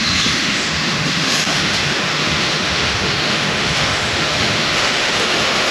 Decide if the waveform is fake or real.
fake